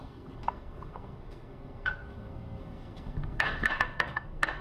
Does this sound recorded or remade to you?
remade